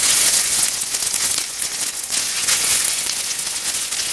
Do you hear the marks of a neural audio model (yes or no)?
yes